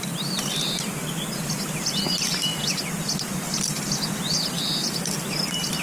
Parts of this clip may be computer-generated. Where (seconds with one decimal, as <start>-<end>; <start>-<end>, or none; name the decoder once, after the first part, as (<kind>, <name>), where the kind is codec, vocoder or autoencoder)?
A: none

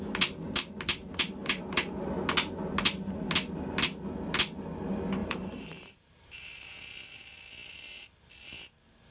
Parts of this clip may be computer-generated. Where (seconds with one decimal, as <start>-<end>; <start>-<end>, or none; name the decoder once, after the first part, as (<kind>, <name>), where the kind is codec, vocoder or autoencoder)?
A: 1.4-2.1 (vocoder, BigVGAN v2); 5.2-6.7

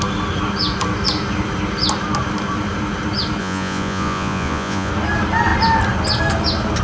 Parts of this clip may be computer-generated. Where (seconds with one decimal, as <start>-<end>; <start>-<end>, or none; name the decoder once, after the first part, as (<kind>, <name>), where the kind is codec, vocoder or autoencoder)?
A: 3.4-4.9 (vocoder, Vocos)

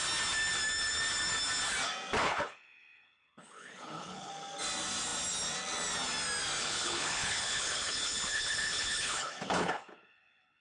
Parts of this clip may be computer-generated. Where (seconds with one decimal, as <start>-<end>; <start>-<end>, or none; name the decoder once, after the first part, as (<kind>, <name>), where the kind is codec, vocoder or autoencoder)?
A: 2.2-4.3 (codec, HILCodec); 6.6-10.6

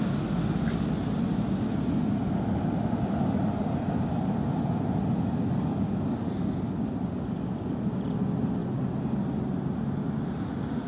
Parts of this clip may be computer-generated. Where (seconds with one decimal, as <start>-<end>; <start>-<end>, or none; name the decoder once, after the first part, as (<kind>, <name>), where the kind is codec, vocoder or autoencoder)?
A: none